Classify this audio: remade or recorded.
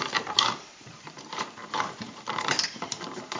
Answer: remade